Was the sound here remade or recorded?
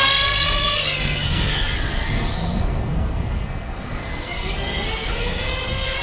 remade